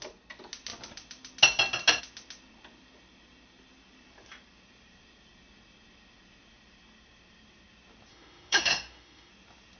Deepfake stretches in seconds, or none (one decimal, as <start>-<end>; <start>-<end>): 8.1-9.3